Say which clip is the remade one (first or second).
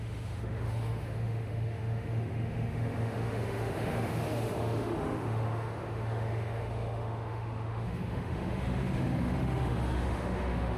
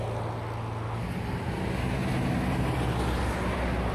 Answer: first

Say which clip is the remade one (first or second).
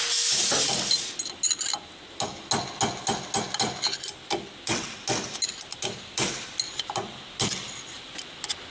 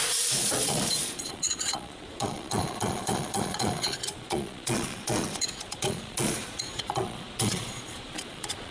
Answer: second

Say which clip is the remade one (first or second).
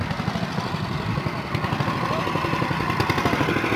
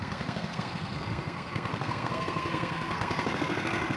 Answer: second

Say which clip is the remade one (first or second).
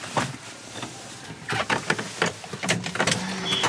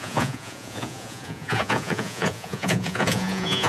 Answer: second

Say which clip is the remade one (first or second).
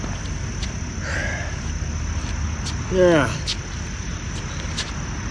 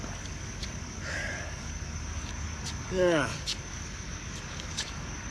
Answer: second